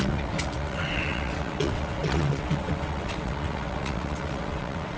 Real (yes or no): no